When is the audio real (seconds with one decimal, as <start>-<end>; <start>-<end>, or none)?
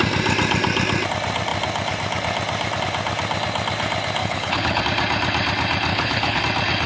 0.0-4.2; 4.8-5.9; 6.4-6.9